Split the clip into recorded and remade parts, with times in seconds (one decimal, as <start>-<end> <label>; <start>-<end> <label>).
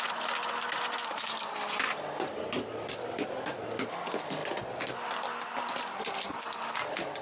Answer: 0.0-7.2 recorded